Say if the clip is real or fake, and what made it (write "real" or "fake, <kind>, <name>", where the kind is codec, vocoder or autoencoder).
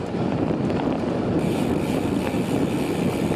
real